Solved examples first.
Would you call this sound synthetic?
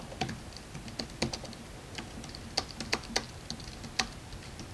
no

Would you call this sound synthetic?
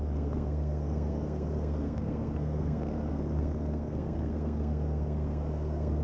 yes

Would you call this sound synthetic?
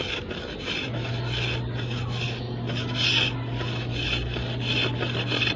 no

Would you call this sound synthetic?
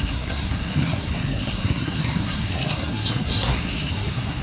yes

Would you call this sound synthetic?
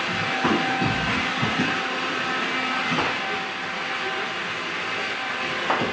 no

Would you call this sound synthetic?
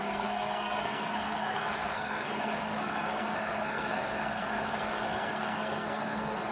yes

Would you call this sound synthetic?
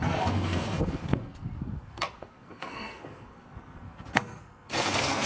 yes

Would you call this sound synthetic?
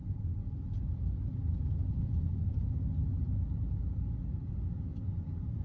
no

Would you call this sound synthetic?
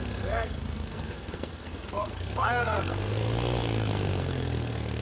yes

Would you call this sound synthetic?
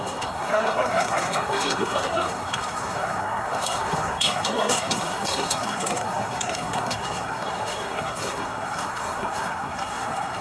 yes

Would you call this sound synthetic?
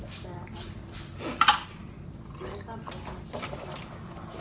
no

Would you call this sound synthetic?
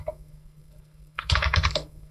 yes